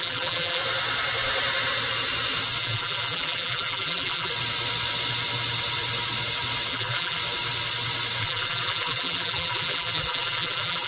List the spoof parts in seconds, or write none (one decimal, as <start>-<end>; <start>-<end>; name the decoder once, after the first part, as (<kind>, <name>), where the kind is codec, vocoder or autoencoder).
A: 0.0-0.6 (vocoder, BigVGAN v2); 2.6-4.3; 6.7-7.2; 8.2-10.9